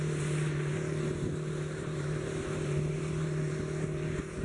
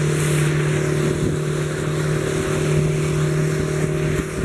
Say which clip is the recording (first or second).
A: second